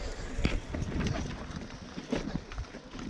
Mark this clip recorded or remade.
recorded